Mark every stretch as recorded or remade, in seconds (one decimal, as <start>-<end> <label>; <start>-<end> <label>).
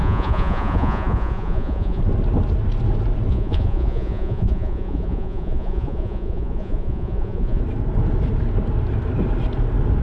0.0-2.0 remade; 2.0-3.3 recorded; 3.3-7.6 remade; 7.6-10.0 recorded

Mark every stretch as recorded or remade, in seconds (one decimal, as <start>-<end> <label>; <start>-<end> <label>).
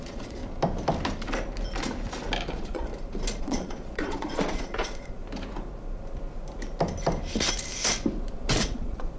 0.0-0.4 remade; 0.4-2.5 recorded; 2.5-2.9 remade; 2.9-3.4 recorded; 3.4-5.2 remade; 5.2-8.3 recorded; 8.3-9.2 remade